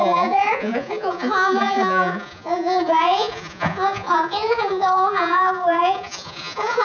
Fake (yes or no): yes